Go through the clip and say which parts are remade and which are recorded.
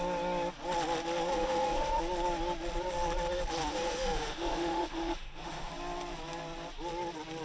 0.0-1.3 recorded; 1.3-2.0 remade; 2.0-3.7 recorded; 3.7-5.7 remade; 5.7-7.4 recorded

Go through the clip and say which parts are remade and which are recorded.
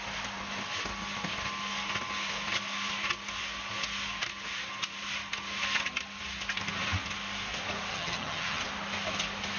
0.0-7.9 recorded; 7.9-8.6 remade; 8.6-9.6 recorded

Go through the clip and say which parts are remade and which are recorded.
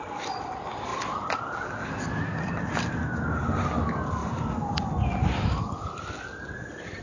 0.0-7.0 recorded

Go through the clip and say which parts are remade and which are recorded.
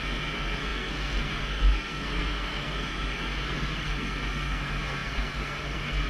0.0-6.1 remade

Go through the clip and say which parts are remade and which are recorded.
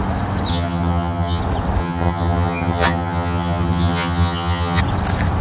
0.0-0.5 recorded; 0.5-1.4 remade; 1.4-1.8 recorded; 1.8-4.8 remade; 4.8-5.4 recorded